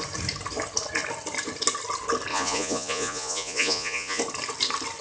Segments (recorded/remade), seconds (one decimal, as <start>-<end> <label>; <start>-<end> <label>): 0.0-2.3 recorded; 2.3-4.2 remade; 4.2-5.0 recorded